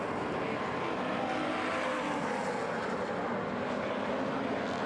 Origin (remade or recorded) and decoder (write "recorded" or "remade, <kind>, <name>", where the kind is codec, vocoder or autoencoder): recorded